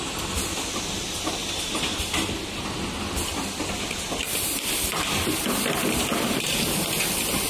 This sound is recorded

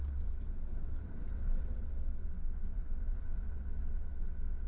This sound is remade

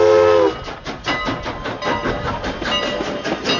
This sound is recorded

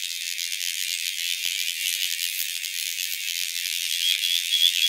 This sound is remade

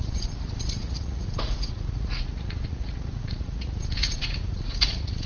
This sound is remade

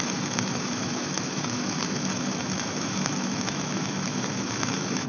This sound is remade